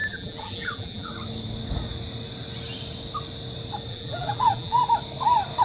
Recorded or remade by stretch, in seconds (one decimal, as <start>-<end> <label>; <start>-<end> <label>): 0.0-1.1 remade; 1.1-3.9 recorded; 3.9-4.8 remade; 4.8-5.6 recorded